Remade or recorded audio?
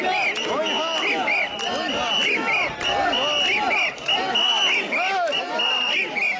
recorded